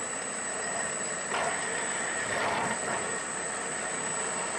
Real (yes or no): no